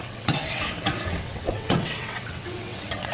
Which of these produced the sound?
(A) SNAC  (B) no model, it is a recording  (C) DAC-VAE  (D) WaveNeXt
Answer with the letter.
D